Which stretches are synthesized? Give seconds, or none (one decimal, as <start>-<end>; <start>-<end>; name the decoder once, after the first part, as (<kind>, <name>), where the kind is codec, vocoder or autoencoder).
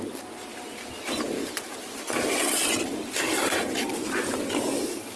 1.4-4.5 (vocoder, BigVGAN v2)